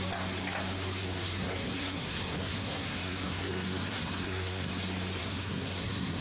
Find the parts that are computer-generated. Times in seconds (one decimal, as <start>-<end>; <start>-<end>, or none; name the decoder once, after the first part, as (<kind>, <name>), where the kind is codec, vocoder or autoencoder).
1.0-4.7 (codec, SNAC); 5.2-6.2